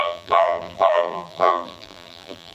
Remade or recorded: remade